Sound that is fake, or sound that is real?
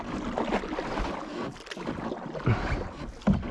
real